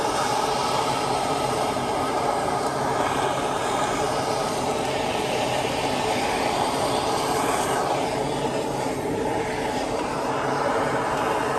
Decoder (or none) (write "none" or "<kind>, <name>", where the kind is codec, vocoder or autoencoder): vocoder, BigVGAN v2